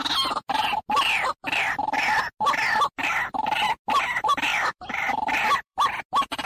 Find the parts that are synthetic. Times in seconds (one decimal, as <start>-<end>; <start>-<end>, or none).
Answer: 4.5-6.0